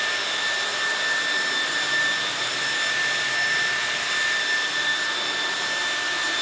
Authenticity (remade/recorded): recorded